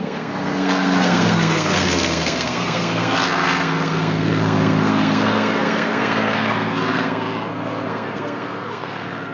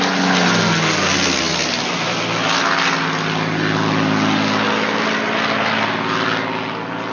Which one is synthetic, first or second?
first